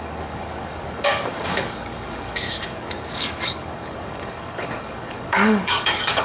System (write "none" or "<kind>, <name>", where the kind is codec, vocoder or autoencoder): codec, DAC